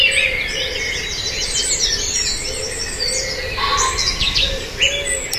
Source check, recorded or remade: recorded